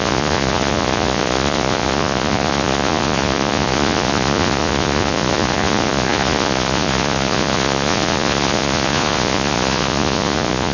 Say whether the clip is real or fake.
fake